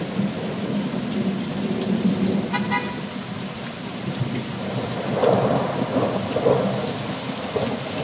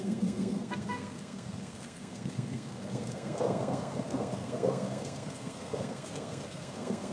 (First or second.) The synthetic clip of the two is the second